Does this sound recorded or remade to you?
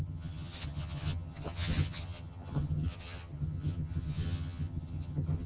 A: remade